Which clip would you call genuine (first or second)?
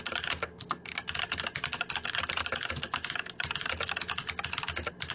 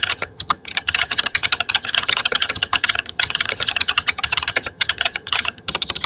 first